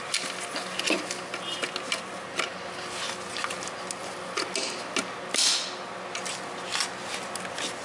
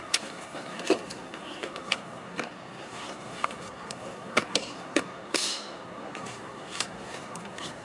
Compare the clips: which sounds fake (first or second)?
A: second